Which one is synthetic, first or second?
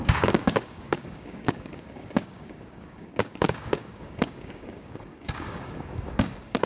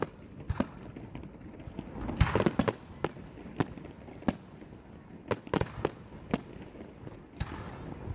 first